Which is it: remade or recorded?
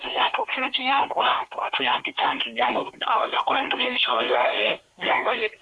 remade